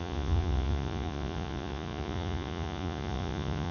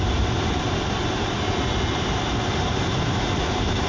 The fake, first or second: first